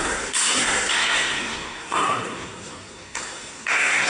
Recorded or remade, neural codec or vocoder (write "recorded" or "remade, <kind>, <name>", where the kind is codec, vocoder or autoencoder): remade, codec, SNAC